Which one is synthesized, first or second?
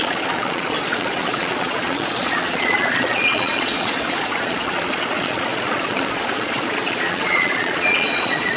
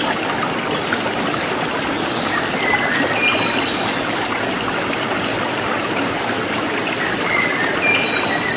first